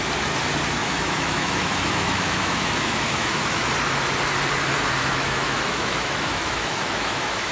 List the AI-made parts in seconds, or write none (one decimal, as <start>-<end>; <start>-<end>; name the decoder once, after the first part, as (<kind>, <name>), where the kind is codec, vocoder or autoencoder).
0.8-3.7 (autoencoder, DAC-VAE); 5.0-7.5